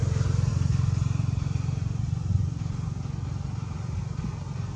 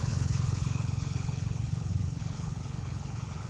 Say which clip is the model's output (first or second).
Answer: second